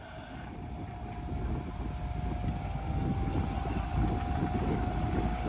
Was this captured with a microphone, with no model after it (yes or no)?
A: yes